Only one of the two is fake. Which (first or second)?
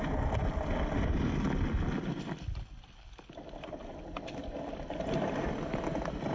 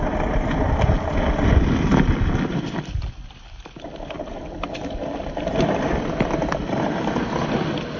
second